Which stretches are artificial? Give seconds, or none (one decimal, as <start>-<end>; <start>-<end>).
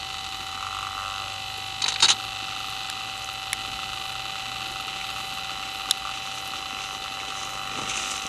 none